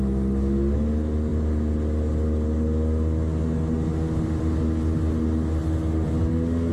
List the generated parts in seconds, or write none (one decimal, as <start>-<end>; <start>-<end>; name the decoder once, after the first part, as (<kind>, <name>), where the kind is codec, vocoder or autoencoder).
none